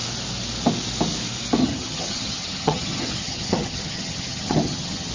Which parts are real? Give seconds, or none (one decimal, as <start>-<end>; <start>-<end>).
0.0-1.6